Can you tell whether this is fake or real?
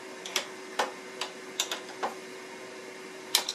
fake